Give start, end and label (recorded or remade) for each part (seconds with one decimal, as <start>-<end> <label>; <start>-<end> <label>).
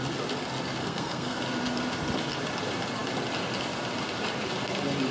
0.0-0.8 recorded; 0.8-1.4 remade; 1.4-5.1 recorded